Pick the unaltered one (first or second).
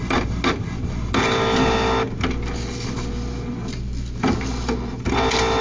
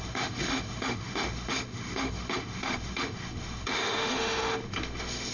first